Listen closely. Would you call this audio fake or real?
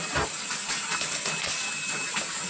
real